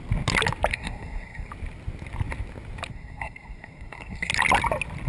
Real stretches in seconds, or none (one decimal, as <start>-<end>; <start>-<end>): 0.0-0.7; 1.5-2.9; 4.3-5.1